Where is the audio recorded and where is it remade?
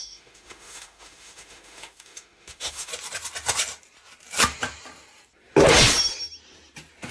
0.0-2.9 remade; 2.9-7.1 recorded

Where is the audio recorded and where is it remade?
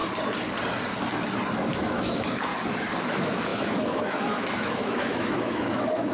0.0-1.7 recorded; 1.7-2.5 remade; 2.5-3.0 recorded; 3.0-6.1 remade